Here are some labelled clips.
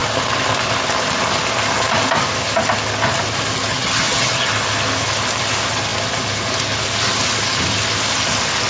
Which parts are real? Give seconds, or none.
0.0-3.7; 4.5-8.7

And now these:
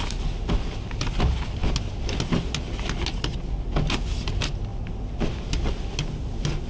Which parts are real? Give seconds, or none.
0.0-6.7

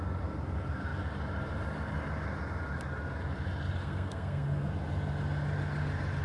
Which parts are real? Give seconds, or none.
0.0-3.8; 4.7-6.2

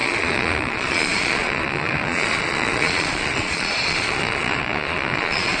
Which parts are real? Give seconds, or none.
none

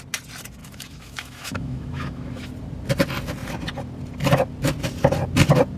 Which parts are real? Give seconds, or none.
0.0-0.6; 2.5-5.8

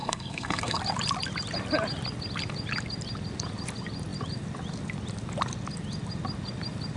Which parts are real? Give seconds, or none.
0.8-7.0

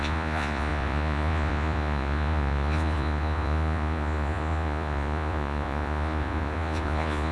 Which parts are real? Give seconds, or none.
none